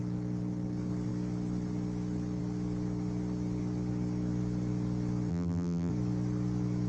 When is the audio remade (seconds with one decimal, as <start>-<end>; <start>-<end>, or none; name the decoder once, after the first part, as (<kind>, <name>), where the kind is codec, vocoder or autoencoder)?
5.3-5.9 (vocoder, BigVGAN v2)